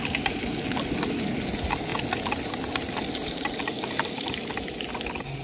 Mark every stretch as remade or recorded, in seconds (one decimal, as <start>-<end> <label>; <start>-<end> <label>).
0.0-5.4 recorded